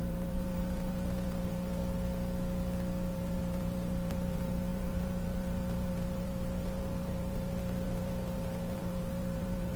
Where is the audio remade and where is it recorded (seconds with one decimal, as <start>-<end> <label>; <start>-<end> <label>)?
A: 0.0-1.8 remade; 1.8-3.1 recorded; 3.1-9.8 remade